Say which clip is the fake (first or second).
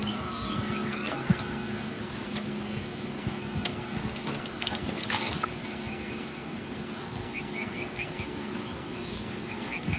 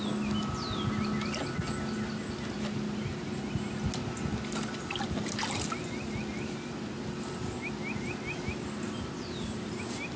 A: first